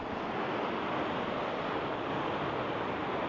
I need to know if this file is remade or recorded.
recorded